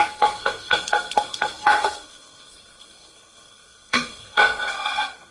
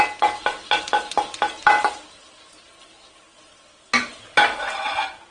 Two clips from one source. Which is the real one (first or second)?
second